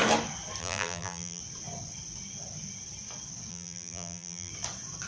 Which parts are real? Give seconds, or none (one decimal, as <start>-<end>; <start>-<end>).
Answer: 0.0-0.6; 1.4-3.5; 4.5-5.1